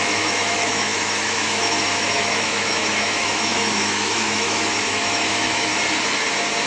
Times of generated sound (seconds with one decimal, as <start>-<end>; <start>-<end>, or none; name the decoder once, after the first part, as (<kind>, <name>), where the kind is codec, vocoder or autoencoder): 0.0-5.7 (autoencoder, DAC-VAE)